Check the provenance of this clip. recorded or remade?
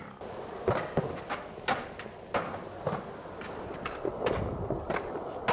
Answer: recorded